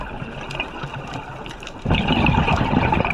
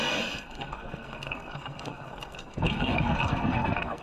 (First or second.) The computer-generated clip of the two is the second